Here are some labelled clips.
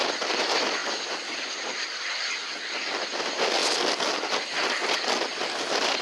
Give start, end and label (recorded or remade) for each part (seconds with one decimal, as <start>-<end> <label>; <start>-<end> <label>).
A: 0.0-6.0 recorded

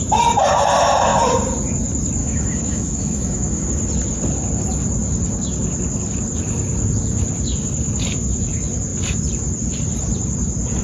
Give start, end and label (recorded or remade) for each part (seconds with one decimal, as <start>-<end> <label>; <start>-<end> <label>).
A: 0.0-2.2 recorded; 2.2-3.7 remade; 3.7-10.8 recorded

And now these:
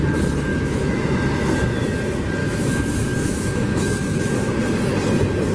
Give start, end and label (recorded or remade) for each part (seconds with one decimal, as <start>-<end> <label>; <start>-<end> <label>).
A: 0.0-0.5 recorded; 0.5-1.0 remade; 1.0-2.4 recorded; 2.4-4.5 remade; 4.5-5.5 recorded

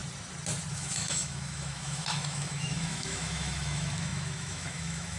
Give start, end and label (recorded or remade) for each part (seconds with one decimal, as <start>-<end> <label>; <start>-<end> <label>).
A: 0.0-0.7 recorded; 0.7-5.2 remade

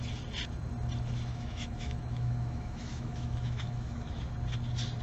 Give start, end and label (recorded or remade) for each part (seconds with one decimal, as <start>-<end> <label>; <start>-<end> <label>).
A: 0.0-1.3 recorded; 1.3-4.2 remade; 4.2-5.0 recorded